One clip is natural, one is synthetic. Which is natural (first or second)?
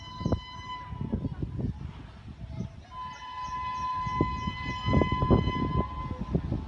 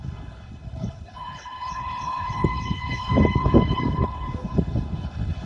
first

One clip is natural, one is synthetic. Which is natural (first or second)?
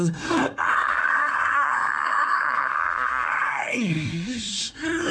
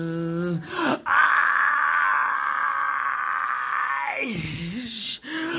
second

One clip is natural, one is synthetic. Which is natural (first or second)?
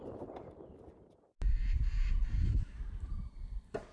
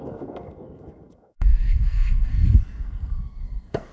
first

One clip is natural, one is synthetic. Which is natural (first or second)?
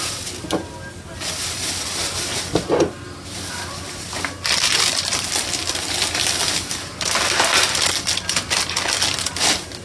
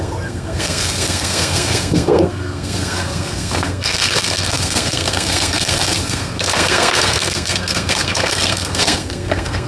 first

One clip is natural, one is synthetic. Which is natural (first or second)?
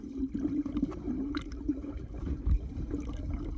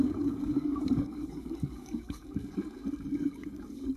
first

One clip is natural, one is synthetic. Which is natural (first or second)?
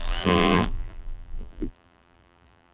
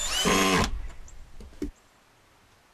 second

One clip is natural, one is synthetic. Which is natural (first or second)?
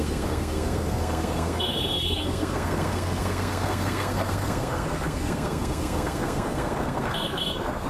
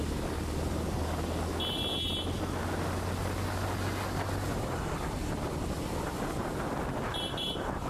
second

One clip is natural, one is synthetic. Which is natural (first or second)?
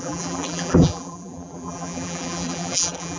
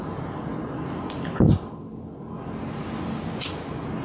second